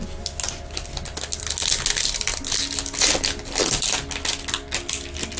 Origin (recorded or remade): recorded